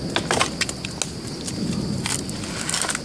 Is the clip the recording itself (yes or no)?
yes